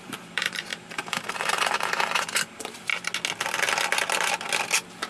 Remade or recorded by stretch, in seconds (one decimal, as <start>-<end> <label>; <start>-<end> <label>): 0.0-2.9 remade; 2.9-5.1 recorded